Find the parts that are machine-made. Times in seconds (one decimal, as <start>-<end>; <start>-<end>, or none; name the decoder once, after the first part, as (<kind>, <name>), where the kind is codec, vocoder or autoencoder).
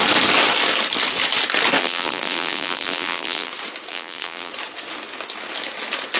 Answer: 1.8-3.5 (vocoder, BigVGAN v2); 3.9-4.5